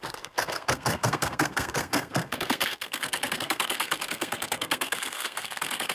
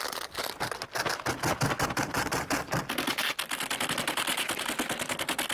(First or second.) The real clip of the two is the second